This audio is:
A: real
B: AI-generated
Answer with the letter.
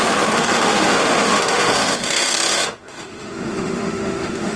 B